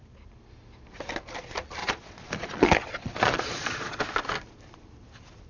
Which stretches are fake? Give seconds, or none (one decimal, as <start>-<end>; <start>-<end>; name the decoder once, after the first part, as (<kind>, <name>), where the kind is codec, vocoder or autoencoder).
1.8-4.0 (vocoder, Vocos)